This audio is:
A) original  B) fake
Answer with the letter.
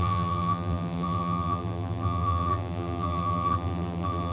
B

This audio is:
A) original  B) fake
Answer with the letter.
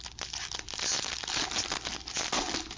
A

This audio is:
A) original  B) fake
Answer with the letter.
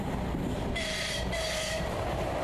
B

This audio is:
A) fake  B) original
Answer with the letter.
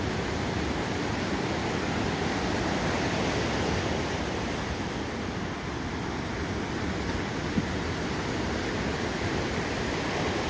B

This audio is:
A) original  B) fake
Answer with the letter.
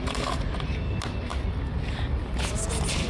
A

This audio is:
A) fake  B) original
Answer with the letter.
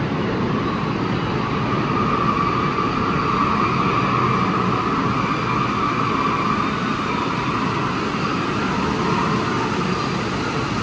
B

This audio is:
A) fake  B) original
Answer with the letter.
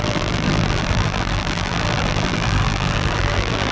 A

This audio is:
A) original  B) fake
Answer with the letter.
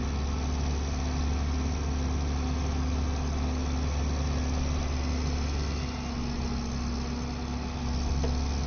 A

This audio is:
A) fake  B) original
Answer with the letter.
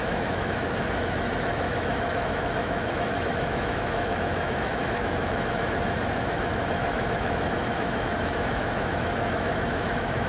A